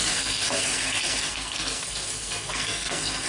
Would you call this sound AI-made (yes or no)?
yes